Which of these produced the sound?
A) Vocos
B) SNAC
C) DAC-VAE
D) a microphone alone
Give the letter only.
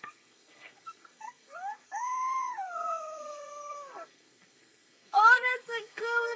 B